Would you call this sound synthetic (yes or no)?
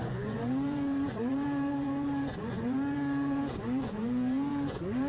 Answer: yes